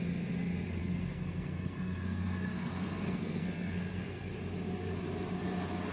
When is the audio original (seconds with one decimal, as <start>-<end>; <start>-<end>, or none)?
0.0-0.8; 4.3-5.9